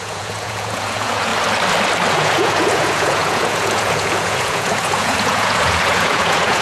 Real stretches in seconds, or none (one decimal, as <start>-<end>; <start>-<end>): 1.3-2.1